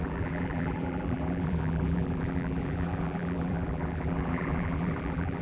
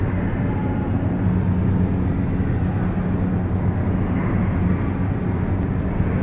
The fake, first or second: first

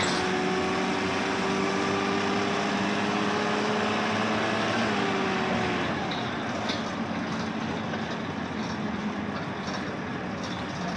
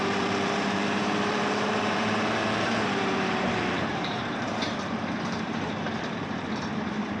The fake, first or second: second